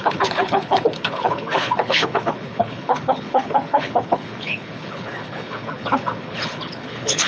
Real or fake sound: fake